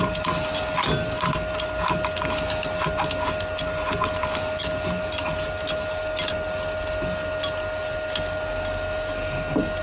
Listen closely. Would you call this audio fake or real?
real